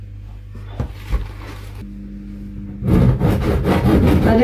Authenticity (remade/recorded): recorded